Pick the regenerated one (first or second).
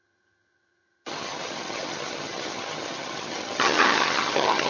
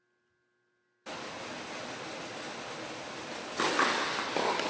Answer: first